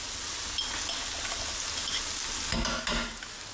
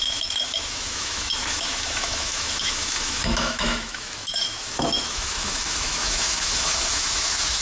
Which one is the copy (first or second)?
second